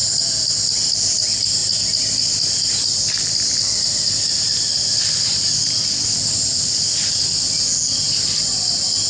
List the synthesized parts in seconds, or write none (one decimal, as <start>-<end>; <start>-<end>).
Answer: none